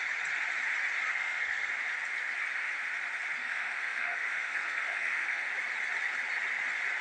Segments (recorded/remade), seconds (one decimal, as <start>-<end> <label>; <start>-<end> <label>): 0.0-1.1 recorded; 1.1-1.7 remade; 1.7-3.4 recorded; 3.4-5.5 remade; 5.5-7.0 recorded